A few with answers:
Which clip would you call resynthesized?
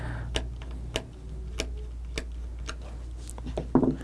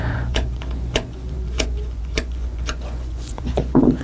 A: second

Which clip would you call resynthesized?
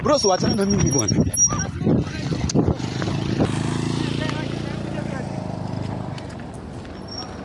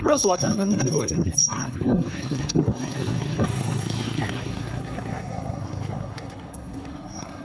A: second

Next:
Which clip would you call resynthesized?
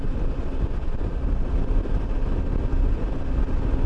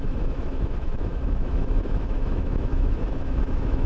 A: second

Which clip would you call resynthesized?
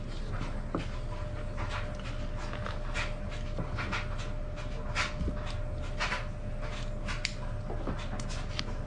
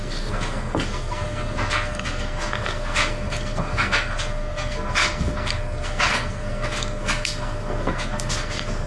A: second